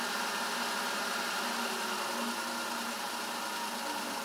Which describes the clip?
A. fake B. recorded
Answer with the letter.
B